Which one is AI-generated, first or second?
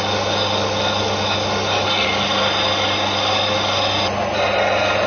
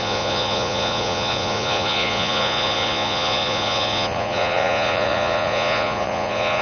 second